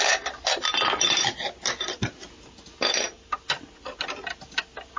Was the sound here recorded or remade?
recorded